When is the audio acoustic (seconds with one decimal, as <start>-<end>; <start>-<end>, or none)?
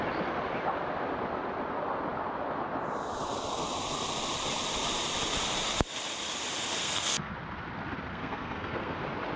0.0-6.8; 7.3-8.1; 9.0-9.4